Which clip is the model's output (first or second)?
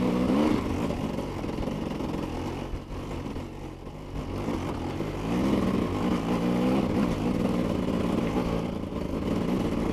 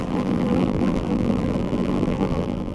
second